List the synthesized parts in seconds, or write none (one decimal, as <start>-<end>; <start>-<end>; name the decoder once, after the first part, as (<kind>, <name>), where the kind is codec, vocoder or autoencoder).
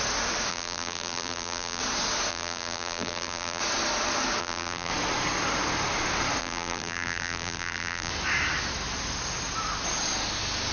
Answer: 0.5-1.8 (vocoder, BigVGAN v2); 2.3-3.6; 4.4-4.9; 6.4-8.1